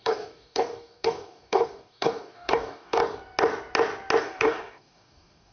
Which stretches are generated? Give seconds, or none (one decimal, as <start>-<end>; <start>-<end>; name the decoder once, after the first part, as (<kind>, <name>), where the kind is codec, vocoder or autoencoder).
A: 0.0-3.0 (codec, DAC); 4.2-5.5